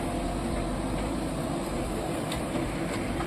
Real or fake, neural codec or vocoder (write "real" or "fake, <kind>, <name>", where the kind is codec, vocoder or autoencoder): real